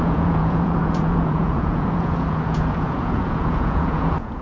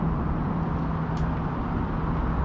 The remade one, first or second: first